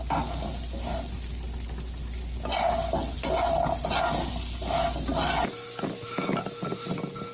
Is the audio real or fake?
real